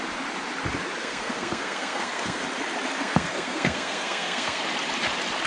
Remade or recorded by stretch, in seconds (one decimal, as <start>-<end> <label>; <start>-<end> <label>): 0.0-1.0 recorded; 1.0-2.4 remade; 2.4-3.0 recorded; 3.0-4.6 remade; 4.6-5.5 recorded